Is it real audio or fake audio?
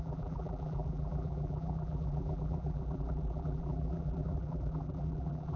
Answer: fake